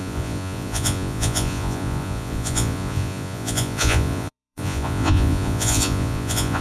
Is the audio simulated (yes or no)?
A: yes